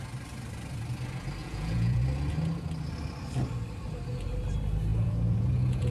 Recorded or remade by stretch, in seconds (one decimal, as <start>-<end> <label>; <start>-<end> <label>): 0.0-1.4 recorded; 1.4-2.0 remade; 2.0-4.9 recorded; 4.9-5.9 remade